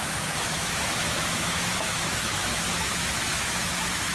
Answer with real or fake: fake